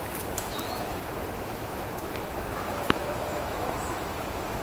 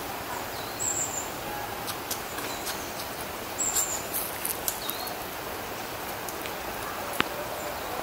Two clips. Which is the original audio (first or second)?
second